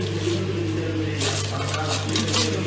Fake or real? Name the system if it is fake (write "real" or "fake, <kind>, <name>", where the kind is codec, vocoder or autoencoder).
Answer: real